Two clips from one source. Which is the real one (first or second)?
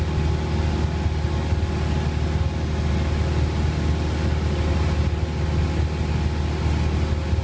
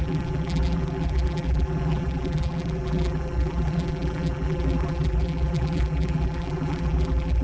first